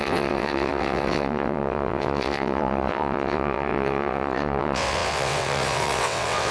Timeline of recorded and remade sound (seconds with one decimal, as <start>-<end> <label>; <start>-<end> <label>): 0.0-6.5 remade